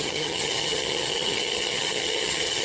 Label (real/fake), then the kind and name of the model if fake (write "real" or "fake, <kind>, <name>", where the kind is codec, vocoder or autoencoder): fake, vocoder, HiFi-GAN